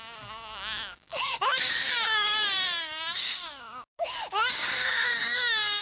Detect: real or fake fake